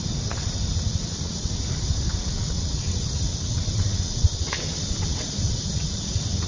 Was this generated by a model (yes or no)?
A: yes